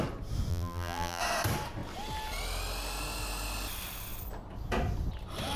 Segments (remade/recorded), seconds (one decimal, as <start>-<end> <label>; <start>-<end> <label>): 0.0-0.5 recorded; 0.5-1.2 remade; 1.2-5.6 recorded